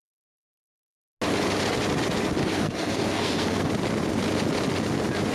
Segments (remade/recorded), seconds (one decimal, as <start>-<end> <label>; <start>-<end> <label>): 0.0-2.4 recorded; 2.4-3.7 remade; 3.7-5.3 recorded